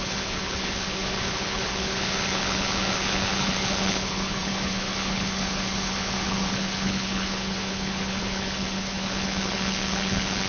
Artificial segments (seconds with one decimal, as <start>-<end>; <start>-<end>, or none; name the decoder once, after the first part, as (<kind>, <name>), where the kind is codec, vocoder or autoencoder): 0.0-10.5 (codec, HILCodec)